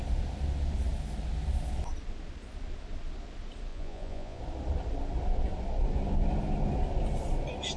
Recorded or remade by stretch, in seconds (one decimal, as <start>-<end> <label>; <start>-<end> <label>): 0.0-3.7 recorded; 3.7-4.4 remade; 4.4-7.8 recorded